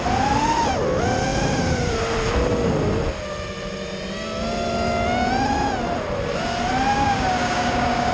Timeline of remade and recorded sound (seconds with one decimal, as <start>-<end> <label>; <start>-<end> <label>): 0.0-6.9 recorded; 6.9-8.1 remade